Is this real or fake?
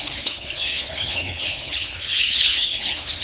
fake